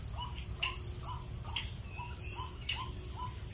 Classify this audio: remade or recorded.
recorded